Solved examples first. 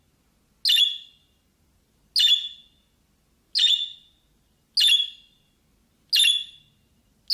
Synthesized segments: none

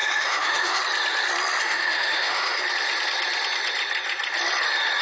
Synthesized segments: 0.0-0.8; 1.6-2.6

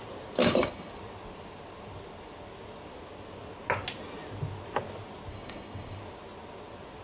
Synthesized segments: 0.4-0.9; 5.3-6.0

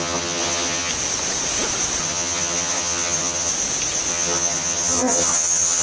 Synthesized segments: 0.0-0.9; 2.0-3.5; 4.1-5.8

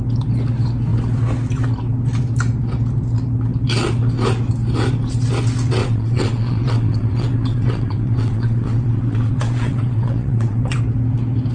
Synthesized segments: 5.8-10.8

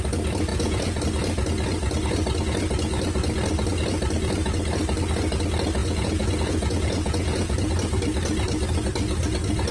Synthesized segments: 0.5-1.0; 5.8-7.7

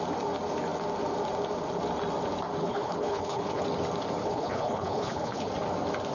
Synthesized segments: 2.6-3.6; 4.2-5.5

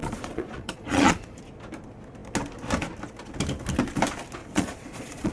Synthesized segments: 0.0-1.4; 4.4-5.3